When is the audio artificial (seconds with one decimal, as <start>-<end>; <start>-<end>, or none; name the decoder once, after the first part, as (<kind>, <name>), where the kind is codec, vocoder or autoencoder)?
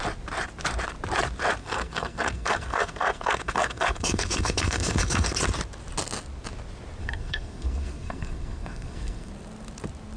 1.6-5.3 (codec, SNAC); 7.0-9.3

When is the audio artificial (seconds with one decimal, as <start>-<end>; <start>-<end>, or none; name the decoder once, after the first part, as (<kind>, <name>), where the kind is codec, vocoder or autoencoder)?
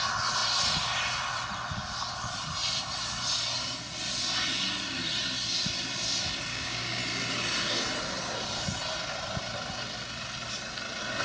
6.5-7.0 (codec, DAC)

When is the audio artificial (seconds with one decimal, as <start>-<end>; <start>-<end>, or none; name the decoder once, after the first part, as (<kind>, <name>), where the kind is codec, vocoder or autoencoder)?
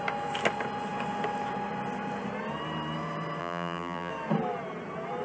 3.4-4.1 (vocoder, BigVGAN v2)